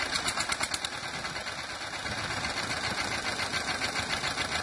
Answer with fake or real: real